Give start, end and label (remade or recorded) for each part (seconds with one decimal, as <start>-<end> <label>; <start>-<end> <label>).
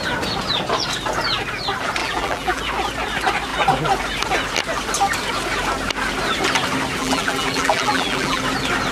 0.0-2.0 recorded; 2.0-2.6 remade; 2.6-7.0 recorded; 7.0-8.4 remade; 8.4-8.9 recorded